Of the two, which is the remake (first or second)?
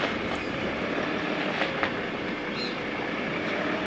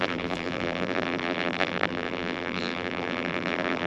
second